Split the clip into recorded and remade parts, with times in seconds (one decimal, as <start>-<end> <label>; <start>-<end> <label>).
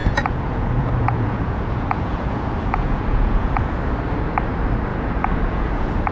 0.0-3.7 remade; 3.7-4.9 recorded; 4.9-6.1 remade